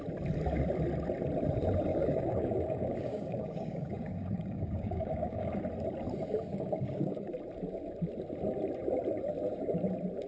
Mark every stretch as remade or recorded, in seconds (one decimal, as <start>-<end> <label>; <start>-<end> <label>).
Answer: 0.0-1.9 recorded; 1.9-5.6 remade; 5.6-6.5 recorded; 6.5-7.3 remade; 7.3-10.3 recorded